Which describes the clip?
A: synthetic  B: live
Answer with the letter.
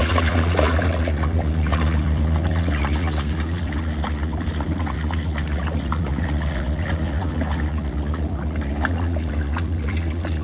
A